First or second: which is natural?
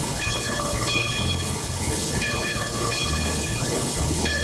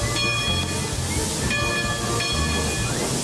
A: second